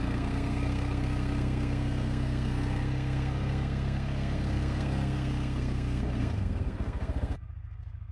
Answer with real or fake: fake